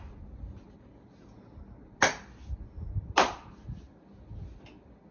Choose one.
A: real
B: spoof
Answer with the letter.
A